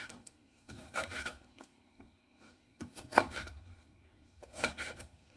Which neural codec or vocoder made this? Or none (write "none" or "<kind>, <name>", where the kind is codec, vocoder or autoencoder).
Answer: codec, SNAC